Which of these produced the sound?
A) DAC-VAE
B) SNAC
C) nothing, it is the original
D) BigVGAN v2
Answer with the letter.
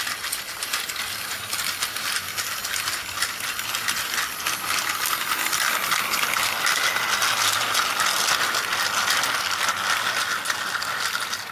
C